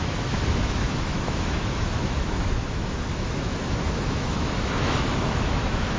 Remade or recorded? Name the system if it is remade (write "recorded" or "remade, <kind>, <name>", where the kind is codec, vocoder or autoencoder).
remade, autoencoder, DAC-VAE